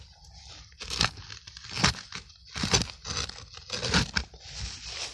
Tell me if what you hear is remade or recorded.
recorded